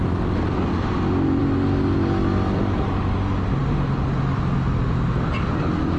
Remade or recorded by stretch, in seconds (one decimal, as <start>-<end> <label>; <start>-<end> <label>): 0.0-6.0 recorded